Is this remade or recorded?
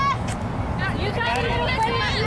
recorded